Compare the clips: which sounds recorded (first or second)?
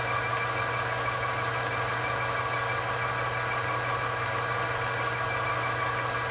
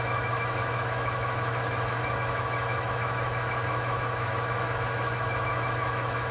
first